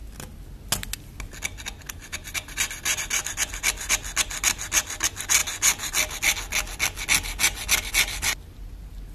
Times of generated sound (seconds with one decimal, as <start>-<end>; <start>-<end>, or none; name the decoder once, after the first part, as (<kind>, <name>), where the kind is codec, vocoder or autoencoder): none